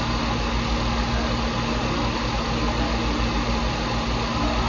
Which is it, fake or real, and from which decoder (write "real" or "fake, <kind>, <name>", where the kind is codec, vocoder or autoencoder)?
real